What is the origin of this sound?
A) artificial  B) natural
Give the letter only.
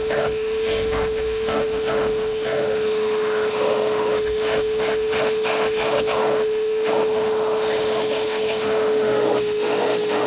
A